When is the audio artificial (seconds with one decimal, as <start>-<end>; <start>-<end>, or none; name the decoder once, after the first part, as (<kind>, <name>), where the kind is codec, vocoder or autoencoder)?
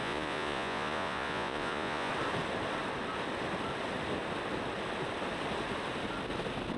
0.0-2.1 (vocoder, Vocos)